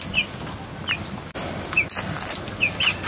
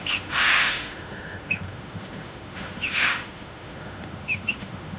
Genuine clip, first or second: first